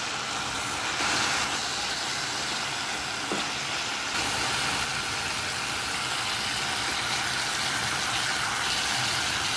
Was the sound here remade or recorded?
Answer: recorded